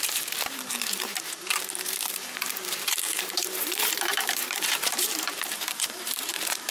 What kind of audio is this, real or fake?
fake